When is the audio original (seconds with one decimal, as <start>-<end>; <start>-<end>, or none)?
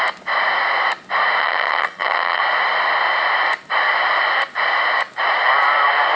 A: 0.0-1.4; 2.4-6.2